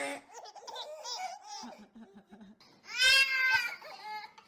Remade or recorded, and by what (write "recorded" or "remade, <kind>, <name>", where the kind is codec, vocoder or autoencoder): recorded